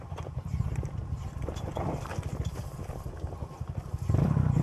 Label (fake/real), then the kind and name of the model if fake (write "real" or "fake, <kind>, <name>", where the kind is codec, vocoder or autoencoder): fake, vocoder, BigVGAN v2